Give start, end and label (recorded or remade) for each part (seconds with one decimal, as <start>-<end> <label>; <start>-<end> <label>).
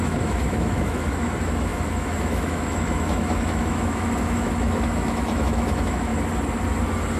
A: 0.0-6.1 remade; 6.1-7.2 recorded